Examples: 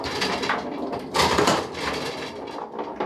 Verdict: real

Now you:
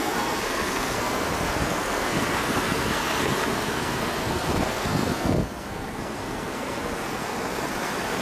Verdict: fake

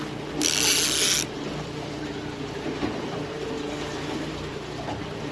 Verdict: real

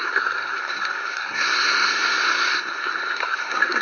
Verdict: fake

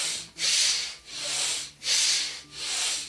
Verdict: real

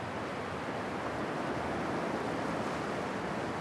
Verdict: real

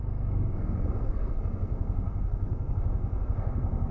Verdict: fake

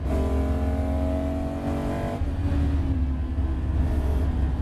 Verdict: real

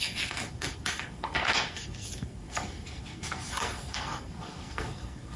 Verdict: fake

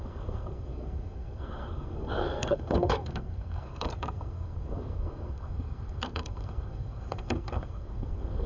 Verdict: fake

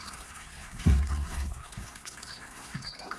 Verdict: fake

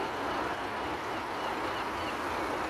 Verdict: real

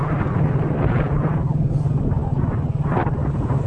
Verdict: real